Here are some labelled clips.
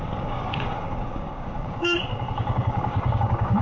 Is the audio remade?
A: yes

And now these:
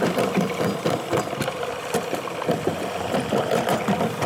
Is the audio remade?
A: no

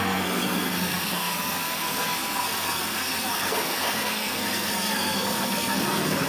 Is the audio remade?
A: yes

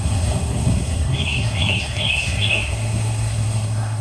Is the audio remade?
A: yes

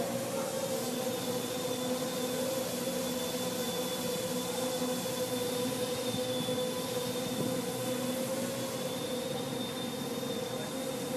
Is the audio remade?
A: no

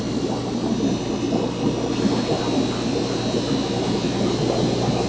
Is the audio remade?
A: no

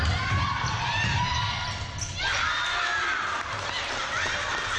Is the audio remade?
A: no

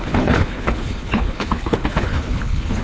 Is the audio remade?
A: yes